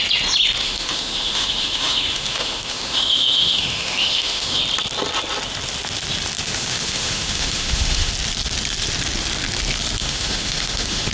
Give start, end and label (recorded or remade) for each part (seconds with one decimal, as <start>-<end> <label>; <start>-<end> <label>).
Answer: 0.0-0.6 recorded; 0.6-4.6 remade; 4.6-6.4 recorded; 6.4-8.1 remade; 8.1-10.0 recorded; 10.0-11.1 remade